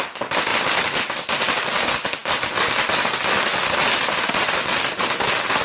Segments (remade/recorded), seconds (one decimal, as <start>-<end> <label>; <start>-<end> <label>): 0.0-5.6 recorded